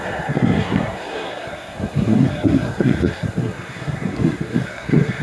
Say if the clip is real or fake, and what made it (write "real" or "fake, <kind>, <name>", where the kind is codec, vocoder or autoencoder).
fake, codec, SNAC